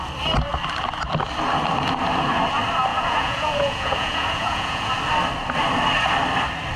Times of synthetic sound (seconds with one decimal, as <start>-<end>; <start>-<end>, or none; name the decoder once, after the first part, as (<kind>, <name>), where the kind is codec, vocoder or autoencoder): 2.9-4.9 (vocoder, Vocos)